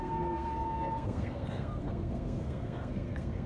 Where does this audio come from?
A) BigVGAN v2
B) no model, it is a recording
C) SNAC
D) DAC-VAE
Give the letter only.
C